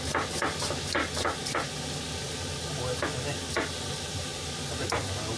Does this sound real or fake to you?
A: real